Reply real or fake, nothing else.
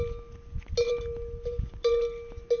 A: real